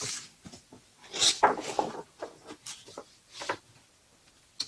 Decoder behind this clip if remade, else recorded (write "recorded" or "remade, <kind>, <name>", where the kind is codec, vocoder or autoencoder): recorded